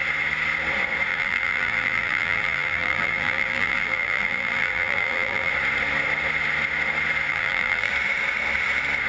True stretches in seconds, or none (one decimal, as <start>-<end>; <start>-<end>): 0.0-1.1; 5.5-7.3; 7.9-9.1